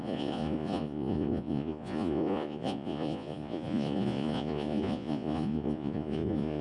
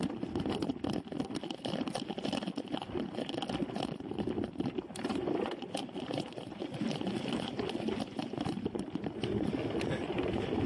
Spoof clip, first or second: first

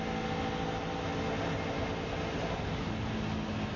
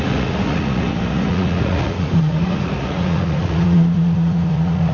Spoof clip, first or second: second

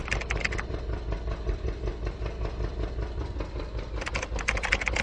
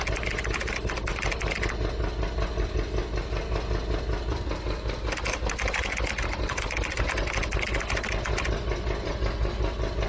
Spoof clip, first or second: first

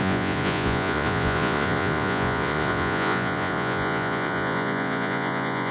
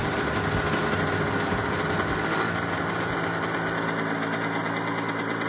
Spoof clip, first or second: first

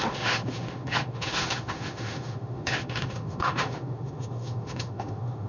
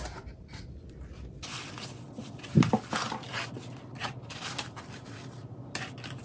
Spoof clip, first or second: first